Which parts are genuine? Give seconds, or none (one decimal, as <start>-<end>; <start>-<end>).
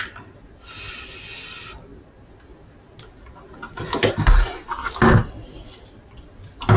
0.0-6.8